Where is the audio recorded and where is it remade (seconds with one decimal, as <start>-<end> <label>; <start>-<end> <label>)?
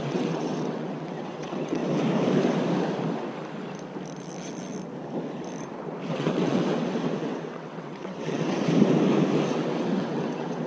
0.0-1.8 remade; 1.8-6.1 recorded; 6.1-8.6 remade; 8.6-9.5 recorded; 9.5-10.7 remade